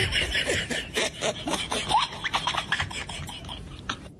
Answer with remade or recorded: remade